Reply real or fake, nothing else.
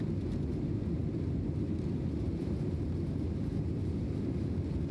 real